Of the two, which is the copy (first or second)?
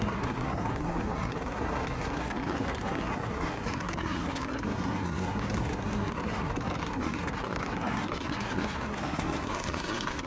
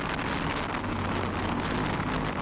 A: first